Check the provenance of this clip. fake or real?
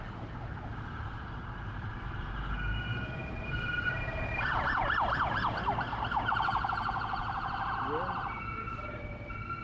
real